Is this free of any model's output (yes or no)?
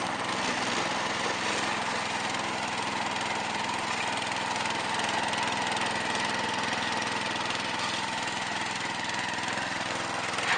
yes